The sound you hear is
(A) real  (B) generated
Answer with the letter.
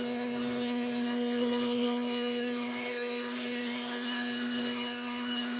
B